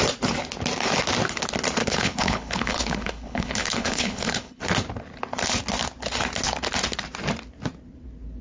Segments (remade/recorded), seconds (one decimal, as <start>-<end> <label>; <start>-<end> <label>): 0.0-1.8 recorded; 1.8-4.6 remade; 4.6-8.4 recorded

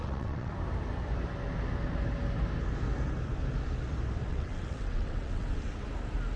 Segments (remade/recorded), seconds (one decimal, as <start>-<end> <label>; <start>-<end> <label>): 0.0-0.5 remade; 0.5-4.3 recorded; 4.3-5.7 remade; 5.7-6.4 recorded

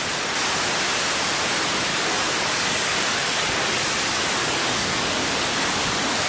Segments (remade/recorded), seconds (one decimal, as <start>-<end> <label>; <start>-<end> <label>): 0.0-1.9 recorded; 1.9-3.8 remade; 3.8-4.4 recorded; 4.4-6.3 remade

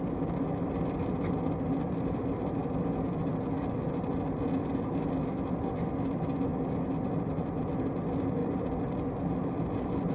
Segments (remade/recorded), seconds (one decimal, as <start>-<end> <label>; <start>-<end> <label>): 0.0-10.1 recorded

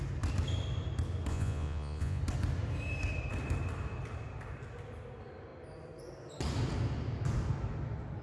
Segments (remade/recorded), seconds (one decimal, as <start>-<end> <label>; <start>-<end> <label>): 0.0-1.3 recorded; 1.3-2.2 remade; 2.2-8.2 recorded